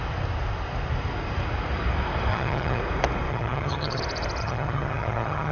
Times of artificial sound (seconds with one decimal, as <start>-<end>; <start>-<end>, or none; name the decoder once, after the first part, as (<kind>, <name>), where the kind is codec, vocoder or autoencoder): 2.3-2.8 (vocoder, HiFi-GAN); 3.3-4.0; 4.4-5.5